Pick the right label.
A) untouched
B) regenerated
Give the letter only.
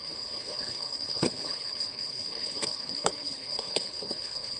B